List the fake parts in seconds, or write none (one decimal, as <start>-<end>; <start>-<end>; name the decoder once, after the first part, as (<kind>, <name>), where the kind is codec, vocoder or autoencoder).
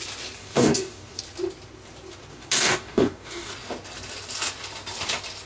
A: 0.4-1.2 (codec, DAC); 2.3-3.5